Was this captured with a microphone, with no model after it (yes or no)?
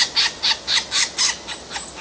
yes